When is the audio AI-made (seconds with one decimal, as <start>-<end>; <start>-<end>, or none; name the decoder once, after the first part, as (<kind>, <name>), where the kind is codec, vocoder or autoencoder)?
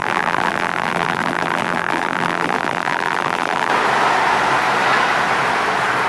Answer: 0.0-3.7 (vocoder, BigVGAN v2)